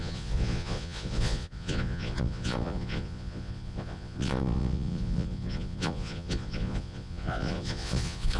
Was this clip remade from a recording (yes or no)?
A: yes